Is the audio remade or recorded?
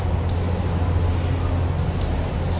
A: recorded